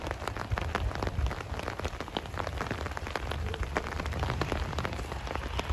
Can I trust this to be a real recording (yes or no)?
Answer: no